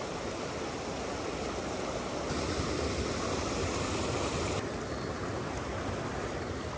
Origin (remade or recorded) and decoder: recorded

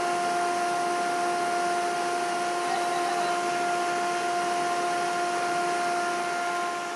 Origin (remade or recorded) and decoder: recorded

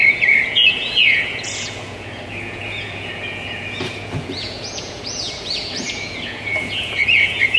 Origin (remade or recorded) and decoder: remade, vocoder, Vocos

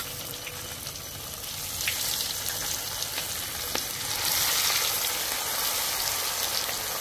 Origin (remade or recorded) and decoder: recorded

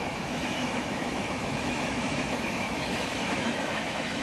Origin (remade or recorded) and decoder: remade, autoencoder, DAC-VAE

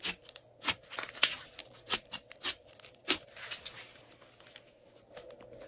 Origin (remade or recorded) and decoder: recorded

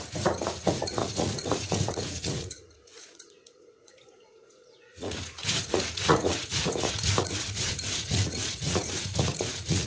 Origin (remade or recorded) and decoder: remade, vocoder, Vocos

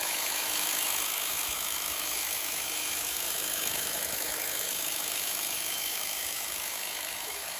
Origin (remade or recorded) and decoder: remade, autoencoder, DAC-VAE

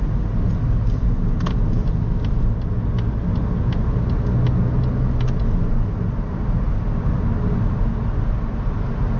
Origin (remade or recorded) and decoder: recorded